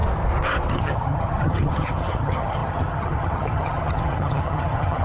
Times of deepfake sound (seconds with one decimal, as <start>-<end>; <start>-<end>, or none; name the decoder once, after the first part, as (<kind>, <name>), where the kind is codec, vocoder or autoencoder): 0.7-5.0 (vocoder, HiFi-GAN)